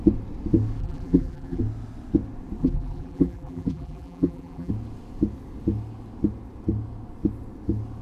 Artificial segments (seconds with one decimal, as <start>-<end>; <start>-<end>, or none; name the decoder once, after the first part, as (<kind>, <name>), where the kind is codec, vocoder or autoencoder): 0.8-1.6 (vocoder, BigVGAN v2); 2.6-4.7